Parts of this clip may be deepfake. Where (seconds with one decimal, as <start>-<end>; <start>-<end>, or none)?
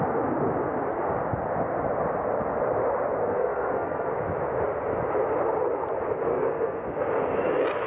3.2-4.1; 6.3-7.1